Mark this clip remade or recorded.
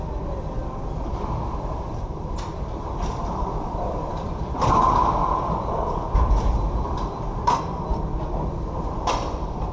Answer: remade